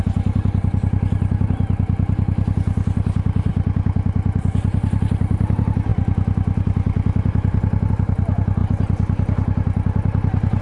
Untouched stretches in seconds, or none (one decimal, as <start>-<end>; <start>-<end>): 0.0-10.6